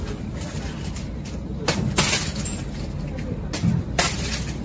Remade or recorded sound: recorded